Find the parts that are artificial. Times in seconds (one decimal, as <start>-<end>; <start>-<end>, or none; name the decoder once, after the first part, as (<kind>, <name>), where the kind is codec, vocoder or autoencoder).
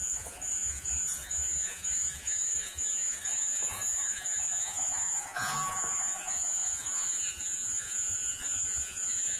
0.0-9.4 (vocoder, Vocos)